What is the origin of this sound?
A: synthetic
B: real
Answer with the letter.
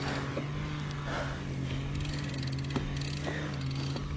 B